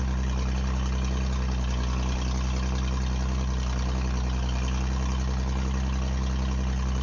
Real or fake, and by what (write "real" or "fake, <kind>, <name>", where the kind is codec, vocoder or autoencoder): real